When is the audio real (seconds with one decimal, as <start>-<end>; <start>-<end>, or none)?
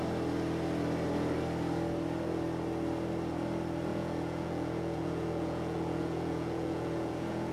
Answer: 0.0-3.9